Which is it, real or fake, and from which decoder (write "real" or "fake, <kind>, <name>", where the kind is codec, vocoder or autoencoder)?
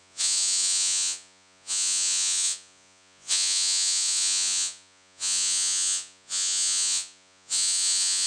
fake, vocoder, Vocos